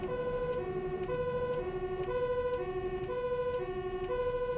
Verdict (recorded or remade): recorded